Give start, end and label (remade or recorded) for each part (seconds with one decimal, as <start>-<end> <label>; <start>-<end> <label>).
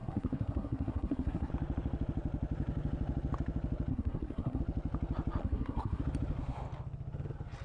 0.0-1.5 remade; 1.5-3.9 recorded; 3.9-4.6 remade; 4.6-5.4 recorded; 5.4-6.0 remade; 6.0-7.6 recorded